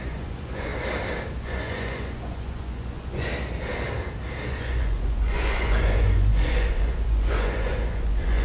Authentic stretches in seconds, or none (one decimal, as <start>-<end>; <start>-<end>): 0.7-1.4; 3.3-4.5